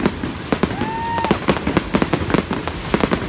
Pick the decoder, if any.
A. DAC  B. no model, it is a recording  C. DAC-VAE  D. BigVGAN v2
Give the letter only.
B